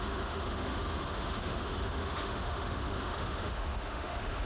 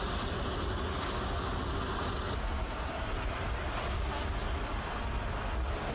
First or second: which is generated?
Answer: first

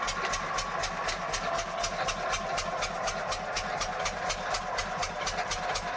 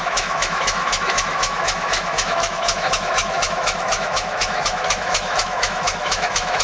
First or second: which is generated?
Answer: second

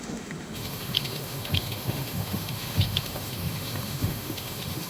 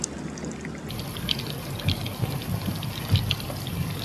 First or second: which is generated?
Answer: first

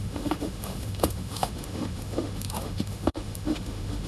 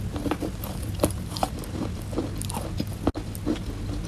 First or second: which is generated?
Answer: first